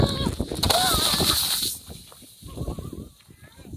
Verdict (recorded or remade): recorded